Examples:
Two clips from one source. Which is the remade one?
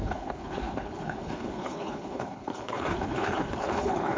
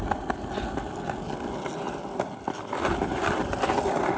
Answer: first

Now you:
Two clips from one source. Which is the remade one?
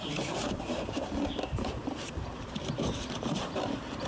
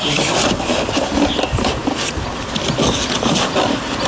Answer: first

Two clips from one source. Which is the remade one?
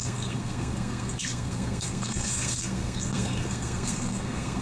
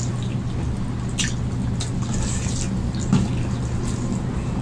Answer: first